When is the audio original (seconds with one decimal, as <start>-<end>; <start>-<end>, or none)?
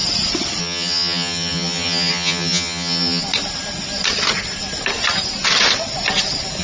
0.0-0.6; 3.2-6.6